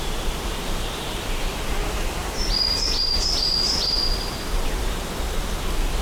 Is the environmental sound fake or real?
real